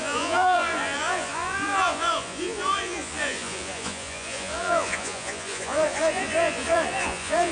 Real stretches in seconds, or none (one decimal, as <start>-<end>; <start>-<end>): none